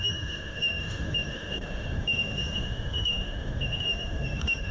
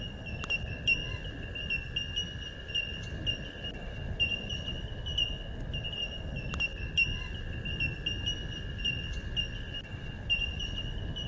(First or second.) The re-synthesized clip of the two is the first